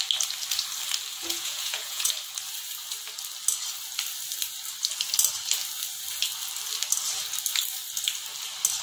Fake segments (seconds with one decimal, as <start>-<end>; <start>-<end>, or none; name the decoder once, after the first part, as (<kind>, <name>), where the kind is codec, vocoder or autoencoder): 1.1-2.1 (vocoder, Vocos)